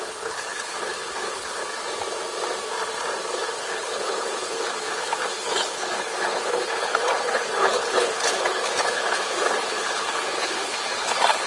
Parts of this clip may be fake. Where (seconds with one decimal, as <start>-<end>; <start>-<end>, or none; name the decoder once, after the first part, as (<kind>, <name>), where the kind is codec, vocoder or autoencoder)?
0.0-1.6 (codec, HILCodec); 3.6-11.5